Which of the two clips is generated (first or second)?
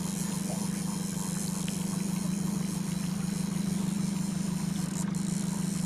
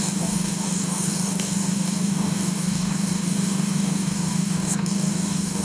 second